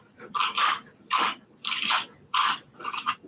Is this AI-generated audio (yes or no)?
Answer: yes